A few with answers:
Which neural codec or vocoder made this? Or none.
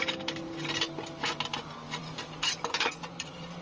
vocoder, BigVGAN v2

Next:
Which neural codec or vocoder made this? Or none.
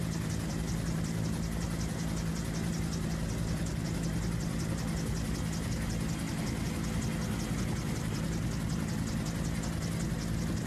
none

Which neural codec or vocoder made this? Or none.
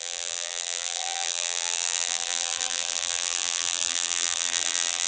vocoder, BigVGAN v2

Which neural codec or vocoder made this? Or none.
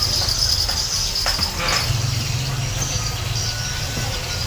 none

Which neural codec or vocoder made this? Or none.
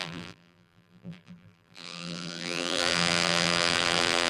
vocoder, BigVGAN v2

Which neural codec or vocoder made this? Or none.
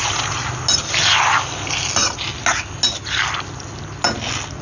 none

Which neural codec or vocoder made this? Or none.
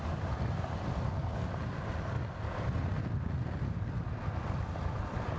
none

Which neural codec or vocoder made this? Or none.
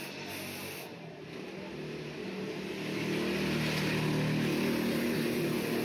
none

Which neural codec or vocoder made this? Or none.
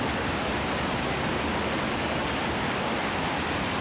none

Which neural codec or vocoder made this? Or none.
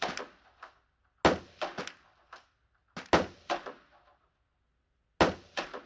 none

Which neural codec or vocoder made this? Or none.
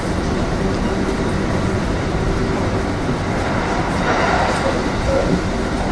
none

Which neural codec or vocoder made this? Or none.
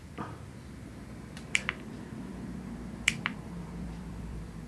vocoder, BigVGAN v2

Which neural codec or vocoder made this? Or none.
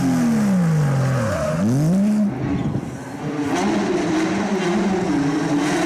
none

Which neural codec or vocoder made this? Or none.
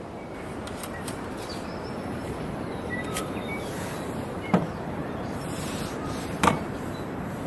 vocoder, BigVGAN v2